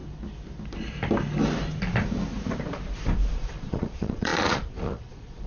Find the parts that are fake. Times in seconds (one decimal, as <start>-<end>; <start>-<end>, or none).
3.3-5.5